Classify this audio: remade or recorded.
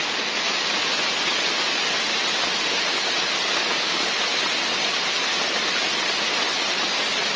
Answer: recorded